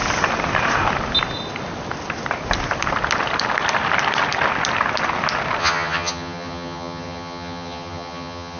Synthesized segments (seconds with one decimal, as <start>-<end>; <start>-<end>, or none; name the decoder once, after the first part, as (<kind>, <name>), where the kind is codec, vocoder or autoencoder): 5.6-8.6 (vocoder, HiFi-GAN)